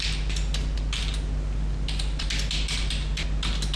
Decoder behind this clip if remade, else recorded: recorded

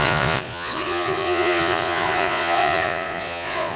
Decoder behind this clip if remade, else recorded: remade, vocoder, Vocos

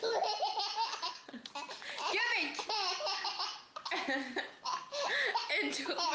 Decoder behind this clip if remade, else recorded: recorded